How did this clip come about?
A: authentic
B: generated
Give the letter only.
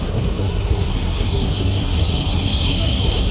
B